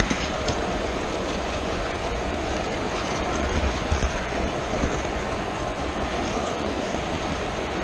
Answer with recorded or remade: remade